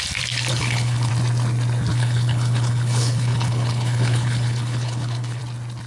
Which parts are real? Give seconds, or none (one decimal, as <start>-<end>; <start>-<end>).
0.0-0.5; 1.1-1.9; 5.4-5.9